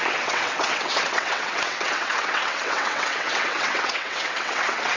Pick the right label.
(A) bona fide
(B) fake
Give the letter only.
B